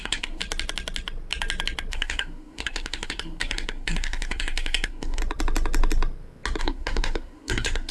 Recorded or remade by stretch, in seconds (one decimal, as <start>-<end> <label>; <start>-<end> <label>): 0.0-0.4 remade; 0.4-1.9 recorded; 1.9-5.2 remade; 5.2-6.6 recorded; 6.6-7.9 remade